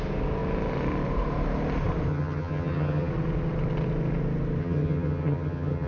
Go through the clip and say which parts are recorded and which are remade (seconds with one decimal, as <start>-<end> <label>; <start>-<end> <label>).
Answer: 0.0-2.1 recorded; 2.1-3.1 remade; 3.1-4.6 recorded; 4.6-5.9 remade